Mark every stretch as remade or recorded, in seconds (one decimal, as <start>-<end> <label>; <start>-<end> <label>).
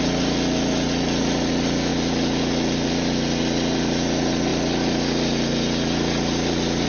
0.0-6.9 recorded